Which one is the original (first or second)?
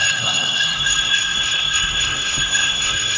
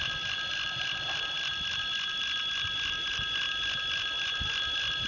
second